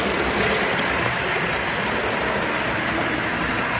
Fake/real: real